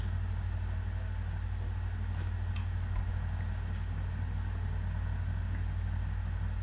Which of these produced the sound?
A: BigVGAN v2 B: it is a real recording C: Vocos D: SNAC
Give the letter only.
B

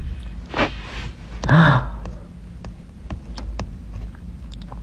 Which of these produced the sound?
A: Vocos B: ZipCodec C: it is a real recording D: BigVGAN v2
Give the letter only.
C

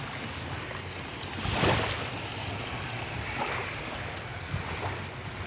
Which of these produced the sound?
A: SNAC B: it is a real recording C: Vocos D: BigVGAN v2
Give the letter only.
B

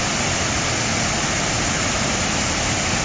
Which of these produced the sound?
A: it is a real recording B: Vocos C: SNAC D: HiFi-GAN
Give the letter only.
A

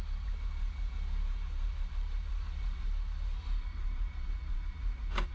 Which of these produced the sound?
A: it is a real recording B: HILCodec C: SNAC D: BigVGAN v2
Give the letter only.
D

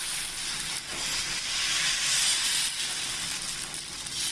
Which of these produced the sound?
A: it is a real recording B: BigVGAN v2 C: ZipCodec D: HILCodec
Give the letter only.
A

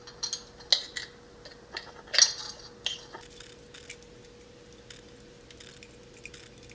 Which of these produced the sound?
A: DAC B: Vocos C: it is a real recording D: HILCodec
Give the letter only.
C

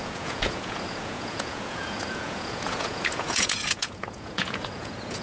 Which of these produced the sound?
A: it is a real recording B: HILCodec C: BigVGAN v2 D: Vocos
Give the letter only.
D